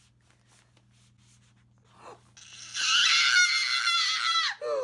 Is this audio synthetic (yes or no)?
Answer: no